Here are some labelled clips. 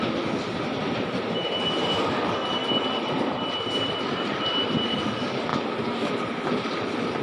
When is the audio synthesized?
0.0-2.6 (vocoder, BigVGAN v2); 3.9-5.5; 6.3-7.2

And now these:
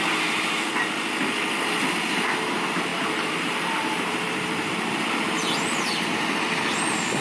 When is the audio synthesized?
2.9-5.0 (vocoder, BigVGAN v2)

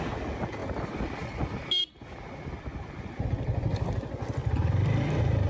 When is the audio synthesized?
0.6-3.2 (vocoder, BigVGAN v2); 4.4-5.5

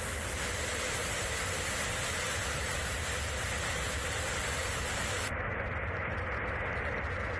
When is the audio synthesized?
none